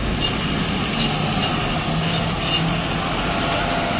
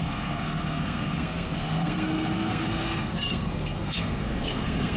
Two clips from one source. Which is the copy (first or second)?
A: second